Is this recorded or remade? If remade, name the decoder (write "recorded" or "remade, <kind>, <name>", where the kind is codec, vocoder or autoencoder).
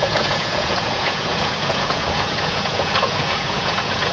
remade, vocoder, Vocos